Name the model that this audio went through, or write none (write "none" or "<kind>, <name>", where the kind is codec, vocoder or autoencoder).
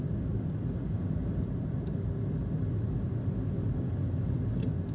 none